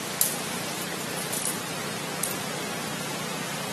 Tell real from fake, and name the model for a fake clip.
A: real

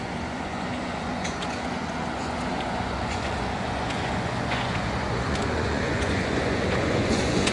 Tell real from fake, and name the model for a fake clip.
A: fake, vocoder, Vocos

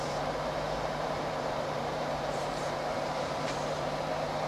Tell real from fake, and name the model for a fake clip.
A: fake, vocoder, BigVGAN v2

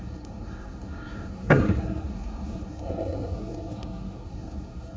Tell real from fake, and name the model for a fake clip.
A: fake, codec, SNAC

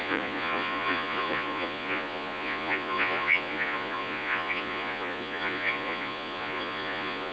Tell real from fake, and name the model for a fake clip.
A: fake, vocoder, Vocos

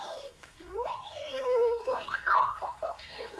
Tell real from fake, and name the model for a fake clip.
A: fake, codec, SNAC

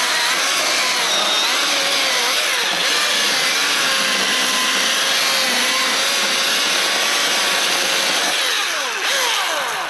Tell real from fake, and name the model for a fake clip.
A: real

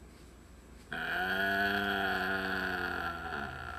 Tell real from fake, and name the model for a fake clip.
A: real